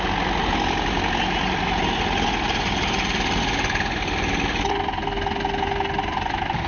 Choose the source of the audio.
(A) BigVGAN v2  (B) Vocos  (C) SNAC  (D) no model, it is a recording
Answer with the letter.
D